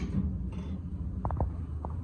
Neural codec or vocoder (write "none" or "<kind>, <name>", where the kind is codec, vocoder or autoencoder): none